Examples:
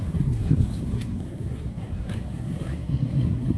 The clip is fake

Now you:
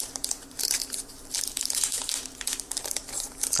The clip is fake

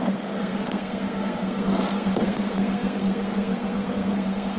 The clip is fake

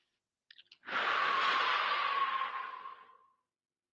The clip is real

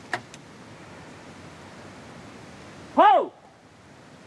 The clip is real